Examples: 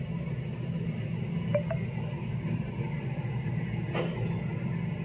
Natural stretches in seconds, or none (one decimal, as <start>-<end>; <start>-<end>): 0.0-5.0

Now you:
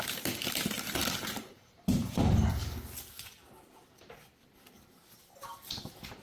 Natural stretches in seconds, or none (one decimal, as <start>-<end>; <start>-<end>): 0.0-0.4; 2.2-6.2

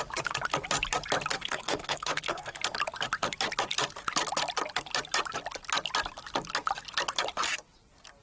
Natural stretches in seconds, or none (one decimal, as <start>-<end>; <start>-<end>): 0.0-1.3; 2.6-8.2

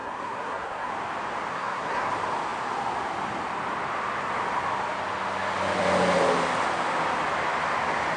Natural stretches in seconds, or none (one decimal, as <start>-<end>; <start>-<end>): 0.9-1.5; 2.1-8.2